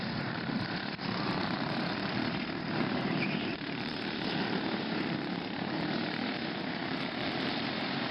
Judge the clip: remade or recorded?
remade